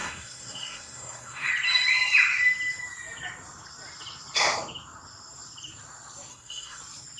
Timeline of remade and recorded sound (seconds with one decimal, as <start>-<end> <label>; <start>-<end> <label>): 0.0-1.5 remade; 1.5-6.3 recorded; 6.3-6.8 remade; 6.8-7.2 recorded